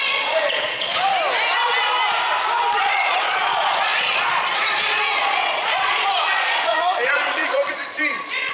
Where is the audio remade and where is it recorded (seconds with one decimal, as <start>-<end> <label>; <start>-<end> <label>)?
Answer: 0.0-1.1 remade; 1.1-2.8 recorded; 2.8-8.5 remade